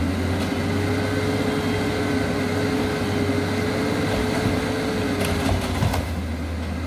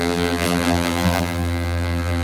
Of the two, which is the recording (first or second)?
first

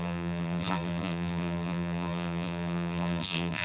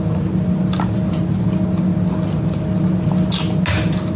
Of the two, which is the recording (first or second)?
second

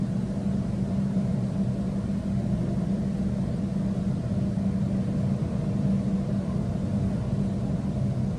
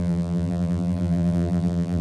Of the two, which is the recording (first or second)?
first